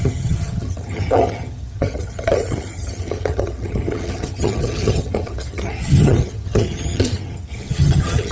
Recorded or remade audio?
remade